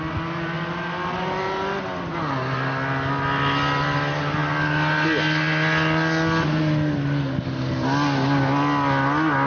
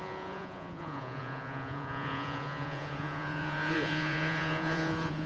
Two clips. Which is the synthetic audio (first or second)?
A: second